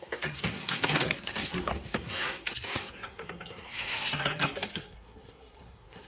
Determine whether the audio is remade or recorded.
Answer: remade